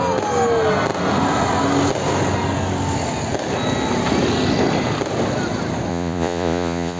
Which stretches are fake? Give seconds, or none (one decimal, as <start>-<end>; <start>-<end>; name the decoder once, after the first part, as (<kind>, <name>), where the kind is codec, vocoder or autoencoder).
5.9-7.0 (vocoder, Vocos)